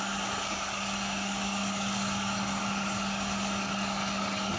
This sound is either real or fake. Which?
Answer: fake